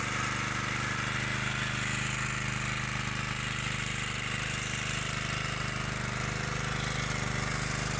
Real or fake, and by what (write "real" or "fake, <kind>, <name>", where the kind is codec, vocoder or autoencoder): real